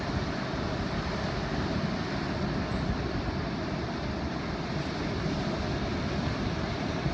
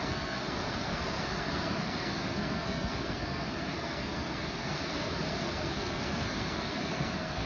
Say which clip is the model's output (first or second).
second